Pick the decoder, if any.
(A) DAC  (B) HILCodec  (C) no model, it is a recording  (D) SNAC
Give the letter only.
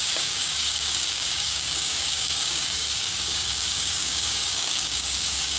A